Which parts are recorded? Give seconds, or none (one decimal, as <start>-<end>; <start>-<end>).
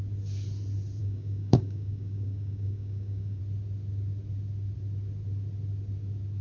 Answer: 0.0-1.0; 3.4-6.4